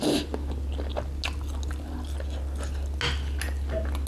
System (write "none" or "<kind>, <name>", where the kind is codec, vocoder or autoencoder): none